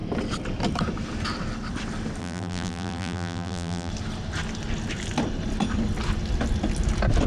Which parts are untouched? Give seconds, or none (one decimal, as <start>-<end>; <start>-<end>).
0.0-2.2; 3.9-7.3